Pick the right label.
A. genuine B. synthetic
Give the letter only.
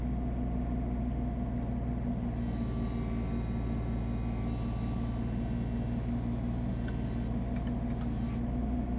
A